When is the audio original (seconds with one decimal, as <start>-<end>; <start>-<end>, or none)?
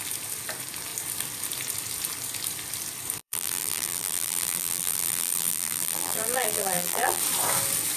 0.0-3.2; 7.2-8.0